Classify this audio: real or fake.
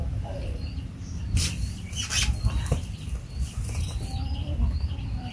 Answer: fake